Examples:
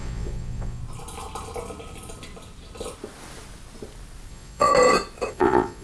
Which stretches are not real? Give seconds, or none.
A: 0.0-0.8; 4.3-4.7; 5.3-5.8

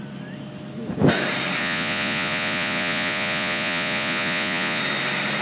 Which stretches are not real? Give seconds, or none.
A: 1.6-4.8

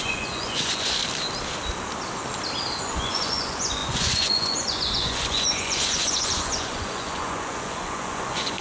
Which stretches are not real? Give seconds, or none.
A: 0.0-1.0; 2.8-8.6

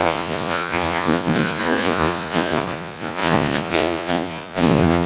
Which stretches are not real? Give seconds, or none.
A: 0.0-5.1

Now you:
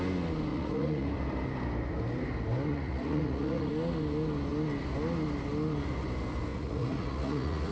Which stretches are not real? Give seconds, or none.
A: 0.5-1.1; 2.7-3.7; 6.5-7.7